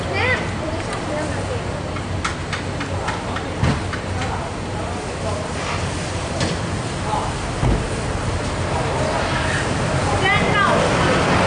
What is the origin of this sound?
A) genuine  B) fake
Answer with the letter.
A